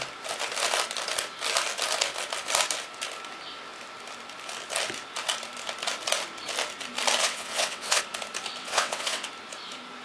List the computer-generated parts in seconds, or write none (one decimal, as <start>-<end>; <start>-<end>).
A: 7.2-8.0; 8.6-9.3